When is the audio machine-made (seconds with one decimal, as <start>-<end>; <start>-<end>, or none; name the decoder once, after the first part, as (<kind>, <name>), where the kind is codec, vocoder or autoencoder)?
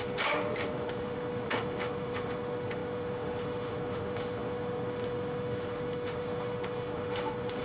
0.0-7.6 (autoencoder, DAC-VAE)